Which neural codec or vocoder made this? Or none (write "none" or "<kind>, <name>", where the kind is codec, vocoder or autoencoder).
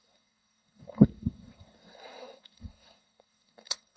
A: codec, SNAC